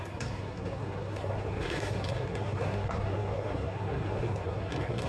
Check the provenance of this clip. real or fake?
fake